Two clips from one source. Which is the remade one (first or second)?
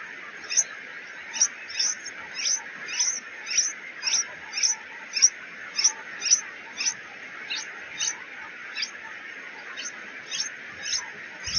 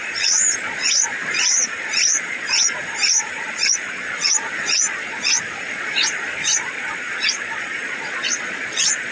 second